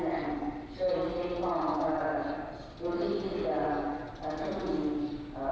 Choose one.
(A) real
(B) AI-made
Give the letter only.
A